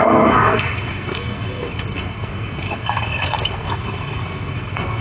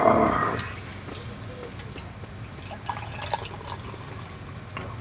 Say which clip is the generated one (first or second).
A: first